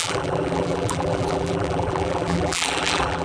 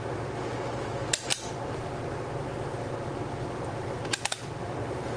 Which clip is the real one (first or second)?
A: second